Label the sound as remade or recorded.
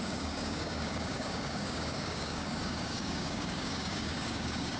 remade